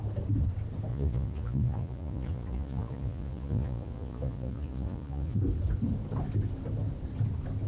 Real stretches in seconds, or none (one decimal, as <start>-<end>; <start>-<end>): 0.0-0.9; 5.4-7.7